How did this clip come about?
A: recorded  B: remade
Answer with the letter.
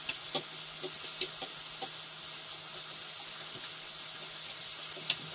A